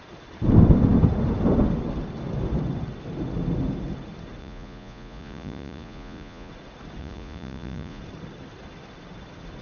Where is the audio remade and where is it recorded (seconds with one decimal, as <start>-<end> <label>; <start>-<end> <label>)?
0.0-4.4 recorded; 4.4-6.5 remade; 6.5-7.0 recorded; 7.0-8.0 remade; 8.0-9.6 recorded